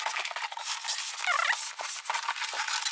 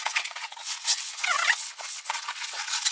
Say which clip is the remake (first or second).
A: second